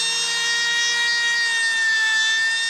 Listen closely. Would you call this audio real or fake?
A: real